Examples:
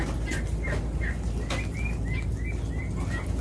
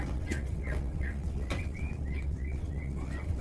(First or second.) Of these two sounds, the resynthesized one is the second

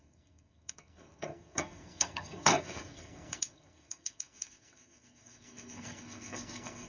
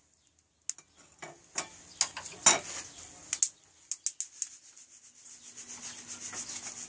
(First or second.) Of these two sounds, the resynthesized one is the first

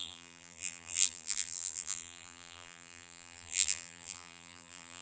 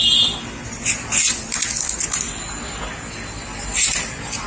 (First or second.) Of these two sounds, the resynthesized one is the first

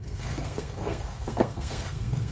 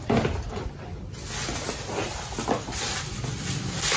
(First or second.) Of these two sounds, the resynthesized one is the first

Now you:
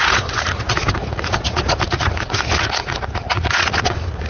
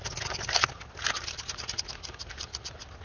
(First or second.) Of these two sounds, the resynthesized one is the first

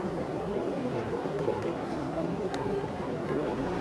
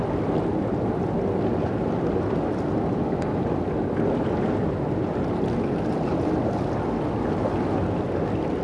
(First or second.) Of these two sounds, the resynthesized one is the first